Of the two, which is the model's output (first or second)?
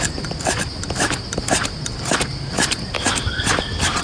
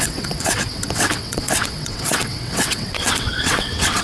second